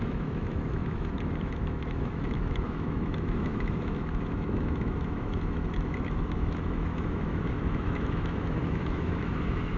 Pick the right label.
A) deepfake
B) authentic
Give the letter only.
A